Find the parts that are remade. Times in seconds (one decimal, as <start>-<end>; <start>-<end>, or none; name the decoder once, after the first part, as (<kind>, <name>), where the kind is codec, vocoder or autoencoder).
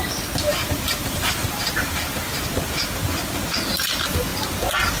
0.5-2.4 (vocoder, BigVGAN v2)